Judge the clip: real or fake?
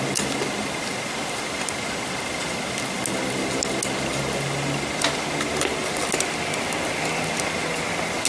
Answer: real